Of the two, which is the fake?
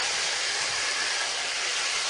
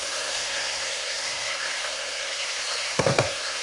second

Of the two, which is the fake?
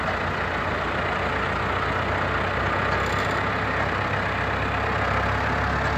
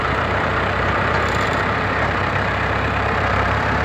second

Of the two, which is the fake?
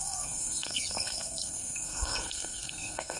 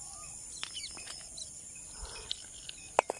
first